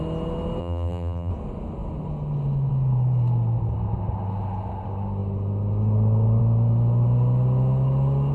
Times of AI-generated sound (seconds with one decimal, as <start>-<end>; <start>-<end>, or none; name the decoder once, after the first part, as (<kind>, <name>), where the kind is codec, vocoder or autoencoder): 0.6-1.3 (vocoder, BigVGAN v2)